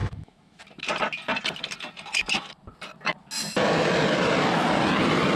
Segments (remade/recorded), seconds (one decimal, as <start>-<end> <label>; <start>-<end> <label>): 0.0-0.6 remade; 0.6-5.4 recorded